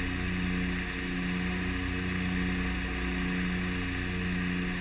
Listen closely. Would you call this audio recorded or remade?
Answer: recorded